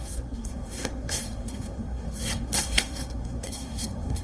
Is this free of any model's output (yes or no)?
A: no